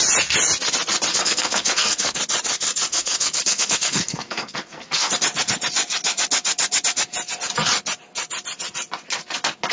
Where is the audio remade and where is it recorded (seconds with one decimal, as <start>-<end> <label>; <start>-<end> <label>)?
0.0-1.1 recorded; 1.1-2.2 remade; 2.2-2.9 recorded; 2.9-5.1 remade; 5.1-9.7 recorded